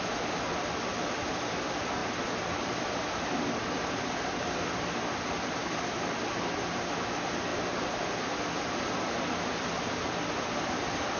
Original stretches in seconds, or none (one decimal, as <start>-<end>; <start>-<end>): 0.0-11.2